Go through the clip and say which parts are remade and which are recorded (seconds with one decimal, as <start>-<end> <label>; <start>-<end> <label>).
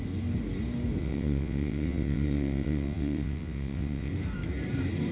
0.0-1.0 recorded; 1.0-4.1 remade; 4.1-5.1 recorded